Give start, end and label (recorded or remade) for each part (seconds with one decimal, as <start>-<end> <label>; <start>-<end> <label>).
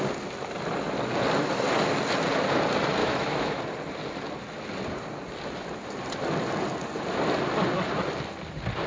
0.0-3.0 recorded; 3.0-3.6 remade; 3.6-8.9 recorded